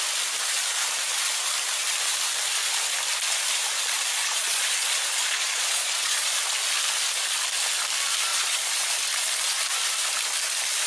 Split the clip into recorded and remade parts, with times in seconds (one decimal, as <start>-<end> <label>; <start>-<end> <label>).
0.0-4.2 recorded; 4.2-6.4 remade; 6.4-8.3 recorded; 8.3-9.0 remade; 9.0-10.9 recorded